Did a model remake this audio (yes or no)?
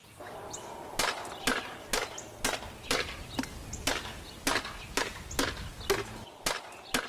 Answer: no